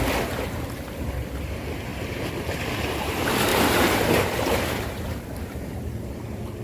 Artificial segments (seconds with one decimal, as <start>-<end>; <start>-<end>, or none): 3.5-5.7